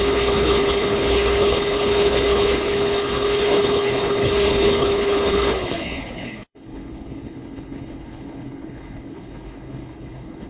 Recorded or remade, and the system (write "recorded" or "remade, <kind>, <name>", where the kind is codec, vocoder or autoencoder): remade, codec, HILCodec